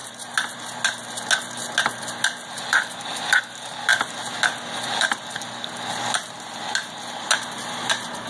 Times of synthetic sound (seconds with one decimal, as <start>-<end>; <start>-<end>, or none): none